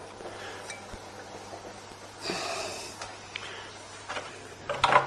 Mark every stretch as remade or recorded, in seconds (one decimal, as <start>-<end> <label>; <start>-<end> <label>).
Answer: 0.0-5.1 recorded